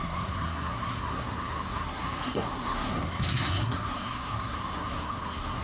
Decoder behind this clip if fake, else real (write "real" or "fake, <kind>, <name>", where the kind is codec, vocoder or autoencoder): fake, codec, SNAC